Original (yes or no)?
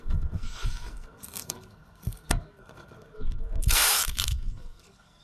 no